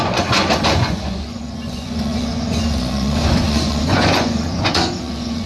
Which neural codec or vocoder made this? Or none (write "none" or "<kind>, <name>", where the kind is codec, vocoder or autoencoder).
vocoder, Vocos